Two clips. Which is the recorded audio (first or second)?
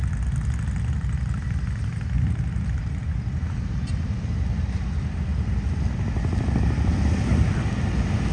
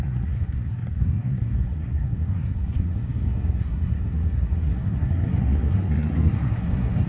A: first